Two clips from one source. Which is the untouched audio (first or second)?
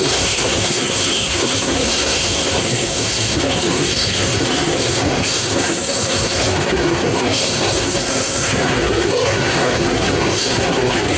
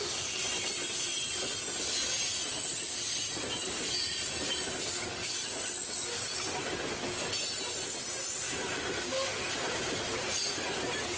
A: second